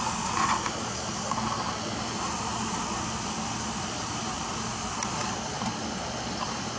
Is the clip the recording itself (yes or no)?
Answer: yes